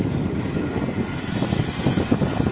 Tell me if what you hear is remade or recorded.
recorded